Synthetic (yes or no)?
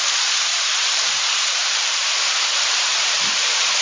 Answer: yes